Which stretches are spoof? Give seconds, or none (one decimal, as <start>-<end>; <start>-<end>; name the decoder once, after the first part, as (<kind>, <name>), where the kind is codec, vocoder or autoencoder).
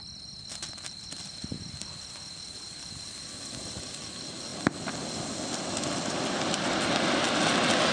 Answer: none